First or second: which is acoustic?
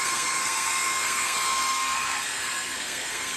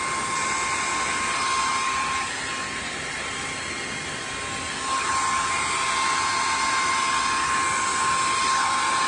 second